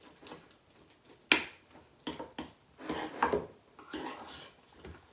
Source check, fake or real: real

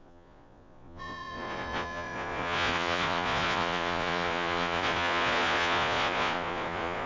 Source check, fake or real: fake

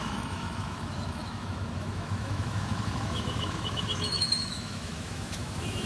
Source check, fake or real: fake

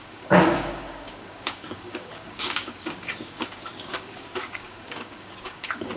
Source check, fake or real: fake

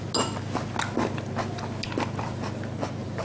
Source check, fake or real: real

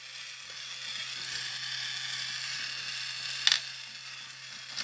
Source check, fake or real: real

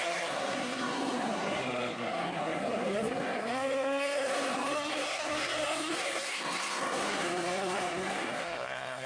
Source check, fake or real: fake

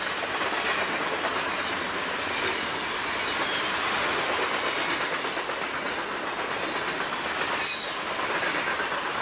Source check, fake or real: real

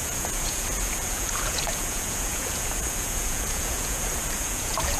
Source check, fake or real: fake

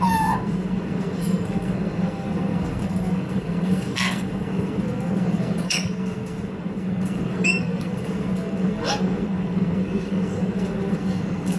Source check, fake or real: fake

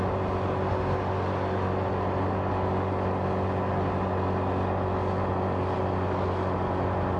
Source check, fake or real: real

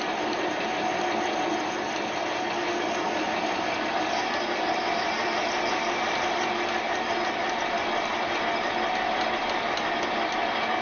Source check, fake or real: real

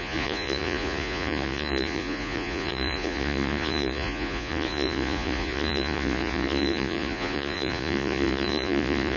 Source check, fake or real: fake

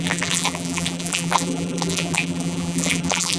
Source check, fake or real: fake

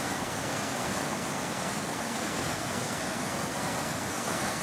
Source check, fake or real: fake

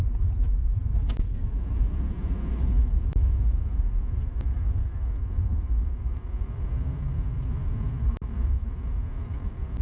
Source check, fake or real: real